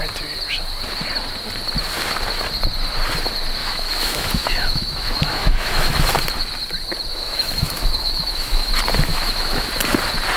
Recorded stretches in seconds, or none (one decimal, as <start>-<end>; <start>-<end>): 0.0-3.6; 6.1-7.1; 8.7-9.1; 9.7-10.4